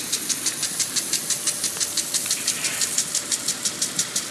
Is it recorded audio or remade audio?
recorded